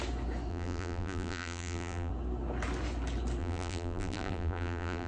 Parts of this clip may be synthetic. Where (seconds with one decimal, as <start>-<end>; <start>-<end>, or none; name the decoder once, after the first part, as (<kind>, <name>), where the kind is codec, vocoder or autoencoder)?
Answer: 0.5-2.1 (vocoder, BigVGAN v2); 3.4-5.1